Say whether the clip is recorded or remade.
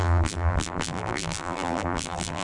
remade